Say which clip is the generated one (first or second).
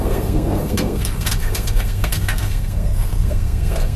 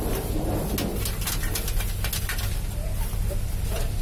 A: first